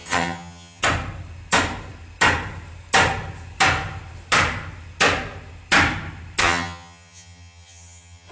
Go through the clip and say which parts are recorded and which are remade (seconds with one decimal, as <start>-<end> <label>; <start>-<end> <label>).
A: 0.0-0.8 remade; 0.8-6.4 recorded; 6.4-8.3 remade